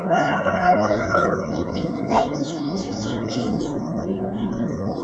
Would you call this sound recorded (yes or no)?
no